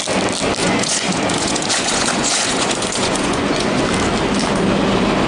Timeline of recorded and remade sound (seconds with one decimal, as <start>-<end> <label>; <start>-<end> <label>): 0.0-0.6 recorded; 0.6-3.8 remade; 3.8-5.3 recorded